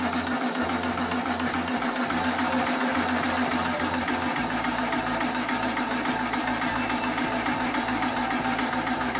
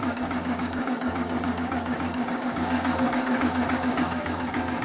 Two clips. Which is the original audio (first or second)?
first